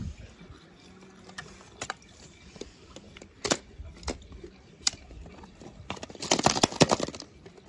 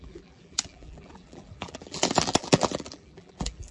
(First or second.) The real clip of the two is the first